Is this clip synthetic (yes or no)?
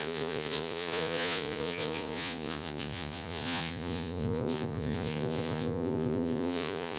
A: yes